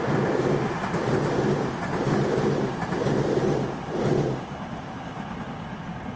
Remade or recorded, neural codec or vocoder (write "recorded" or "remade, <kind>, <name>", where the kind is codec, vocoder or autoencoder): recorded